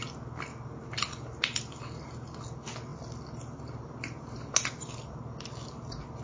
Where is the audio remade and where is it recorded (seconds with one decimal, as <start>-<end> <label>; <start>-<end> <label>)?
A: 0.0-6.2 recorded